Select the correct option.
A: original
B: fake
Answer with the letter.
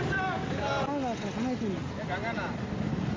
A